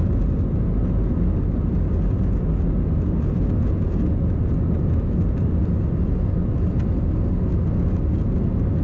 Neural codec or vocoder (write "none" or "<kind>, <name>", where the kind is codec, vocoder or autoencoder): none